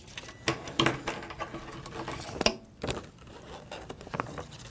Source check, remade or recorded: recorded